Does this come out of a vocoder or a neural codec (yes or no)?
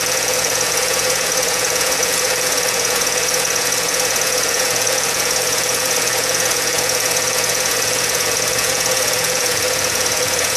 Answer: yes